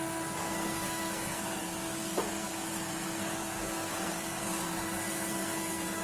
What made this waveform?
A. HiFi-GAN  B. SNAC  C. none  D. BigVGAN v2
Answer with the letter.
B